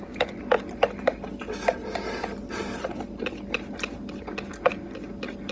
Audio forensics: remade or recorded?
recorded